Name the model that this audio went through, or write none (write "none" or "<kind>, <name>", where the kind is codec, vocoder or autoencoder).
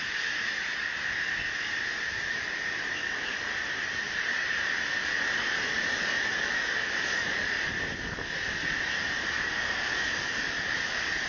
none